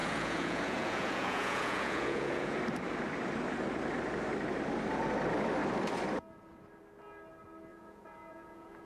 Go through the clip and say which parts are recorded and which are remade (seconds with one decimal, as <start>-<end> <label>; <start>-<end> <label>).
0.0-2.6 remade; 2.6-7.7 recorded; 7.7-8.8 remade